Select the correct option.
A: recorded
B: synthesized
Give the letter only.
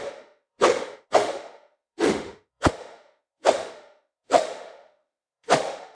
B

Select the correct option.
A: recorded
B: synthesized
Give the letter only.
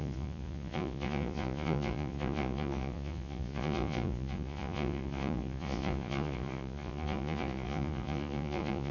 B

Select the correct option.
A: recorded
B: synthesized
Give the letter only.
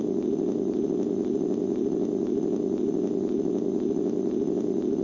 A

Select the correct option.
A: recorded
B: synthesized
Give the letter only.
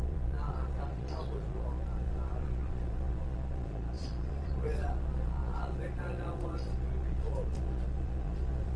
B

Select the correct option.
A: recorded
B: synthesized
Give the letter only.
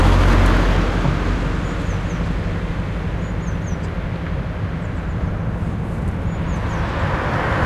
A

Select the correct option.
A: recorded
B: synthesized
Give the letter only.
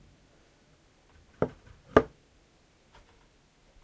A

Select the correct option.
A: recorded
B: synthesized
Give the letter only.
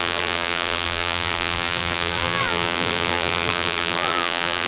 B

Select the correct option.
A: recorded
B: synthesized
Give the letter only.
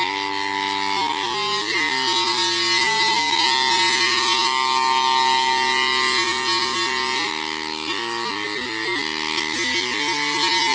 A